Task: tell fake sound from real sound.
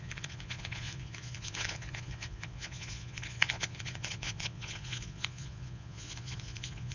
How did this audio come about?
fake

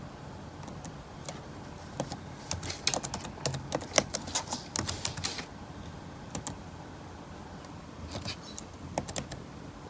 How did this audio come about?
real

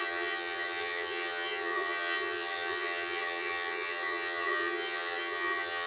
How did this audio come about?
fake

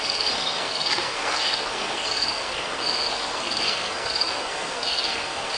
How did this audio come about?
fake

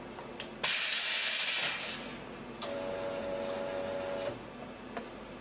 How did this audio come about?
real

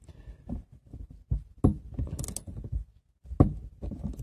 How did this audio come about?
real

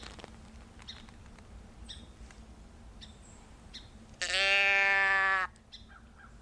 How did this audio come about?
real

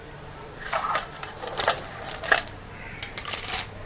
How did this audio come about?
fake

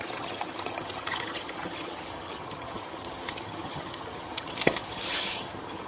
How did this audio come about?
fake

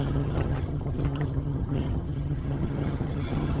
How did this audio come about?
fake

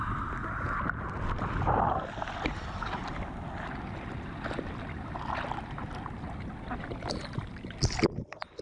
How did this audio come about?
real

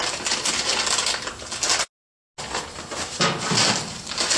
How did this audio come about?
real